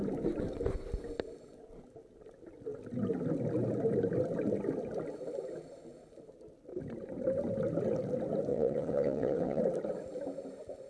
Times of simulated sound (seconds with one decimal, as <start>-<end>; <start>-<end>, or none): 8.5-9.6